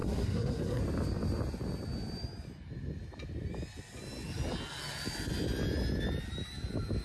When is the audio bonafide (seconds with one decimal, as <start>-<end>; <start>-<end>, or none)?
0.8-7.0

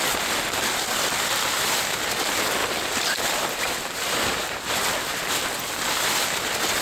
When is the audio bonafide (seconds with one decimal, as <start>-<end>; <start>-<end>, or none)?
0.0-2.6; 4.8-6.8

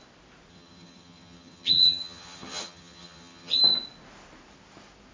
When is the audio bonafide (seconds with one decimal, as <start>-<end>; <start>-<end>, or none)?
0.0-0.5; 3.6-5.1

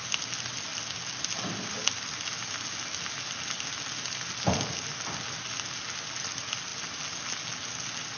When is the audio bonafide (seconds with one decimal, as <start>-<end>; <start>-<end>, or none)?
0.0-8.2

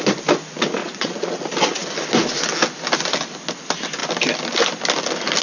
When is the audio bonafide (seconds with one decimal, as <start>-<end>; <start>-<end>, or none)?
0.0-0.8; 1.4-5.4

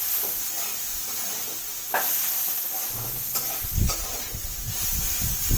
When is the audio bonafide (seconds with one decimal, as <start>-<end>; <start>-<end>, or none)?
0.0-5.6

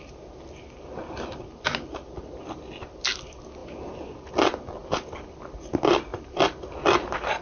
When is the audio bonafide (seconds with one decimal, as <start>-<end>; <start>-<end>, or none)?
0.0-4.8; 5.4-6.1; 6.7-7.4